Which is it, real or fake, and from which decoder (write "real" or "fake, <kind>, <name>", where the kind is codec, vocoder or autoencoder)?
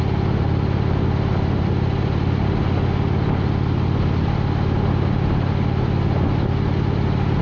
real